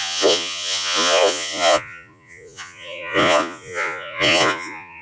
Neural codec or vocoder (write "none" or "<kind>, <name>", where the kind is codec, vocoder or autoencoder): vocoder, Vocos